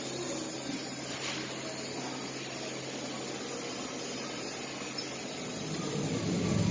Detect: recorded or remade recorded